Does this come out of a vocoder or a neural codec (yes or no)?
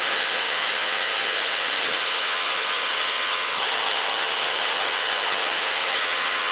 yes